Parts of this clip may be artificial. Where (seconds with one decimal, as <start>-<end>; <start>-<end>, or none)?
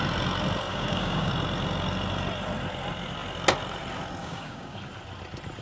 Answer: 0.7-1.3; 4.2-4.8